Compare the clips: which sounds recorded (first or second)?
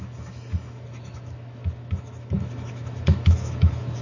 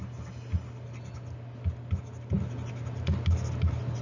second